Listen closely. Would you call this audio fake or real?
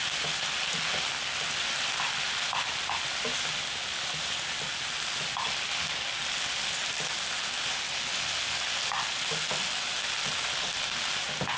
real